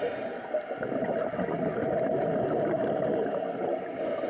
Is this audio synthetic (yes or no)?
no